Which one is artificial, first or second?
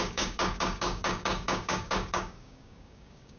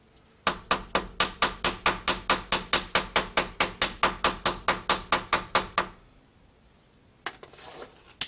first